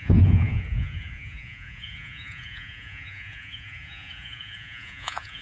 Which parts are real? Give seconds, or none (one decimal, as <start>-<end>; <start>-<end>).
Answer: none